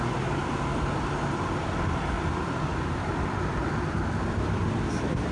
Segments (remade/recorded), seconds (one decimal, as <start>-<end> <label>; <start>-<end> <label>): 0.0-2.7 recorded; 2.7-5.3 remade